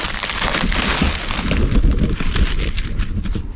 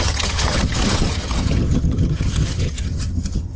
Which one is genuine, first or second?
first